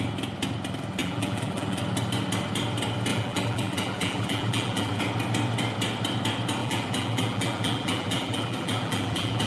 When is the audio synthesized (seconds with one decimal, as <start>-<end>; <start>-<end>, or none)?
1.0-1.8; 3.1-5.0; 6.6-9.5